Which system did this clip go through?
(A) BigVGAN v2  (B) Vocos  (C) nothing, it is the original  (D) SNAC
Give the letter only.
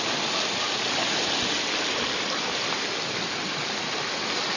C